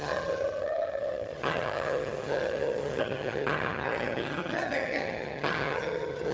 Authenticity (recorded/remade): remade